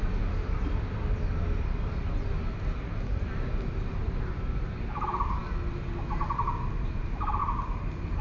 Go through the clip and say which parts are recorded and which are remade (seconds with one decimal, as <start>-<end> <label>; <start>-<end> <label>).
0.0-4.3 recorded; 4.3-5.4 remade; 5.4-6.9 recorded; 6.9-8.2 remade